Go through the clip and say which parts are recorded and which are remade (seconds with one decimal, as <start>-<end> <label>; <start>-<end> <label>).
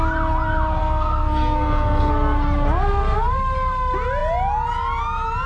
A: 0.0-0.8 recorded; 0.8-2.1 remade; 2.1-5.5 recorded